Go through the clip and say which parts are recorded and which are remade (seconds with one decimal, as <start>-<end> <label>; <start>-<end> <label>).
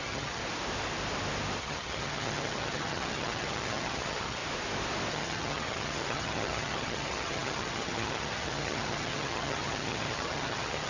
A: 0.0-0.4 remade; 0.4-1.6 recorded; 1.6-4.4 remade; 4.4-5.1 recorded; 5.1-10.9 remade